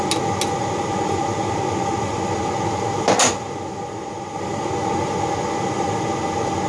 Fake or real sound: real